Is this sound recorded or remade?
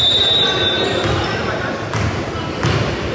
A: recorded